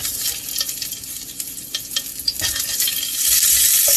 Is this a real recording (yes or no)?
yes